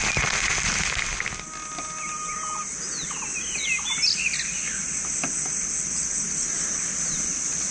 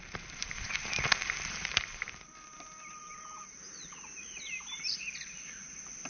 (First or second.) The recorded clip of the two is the first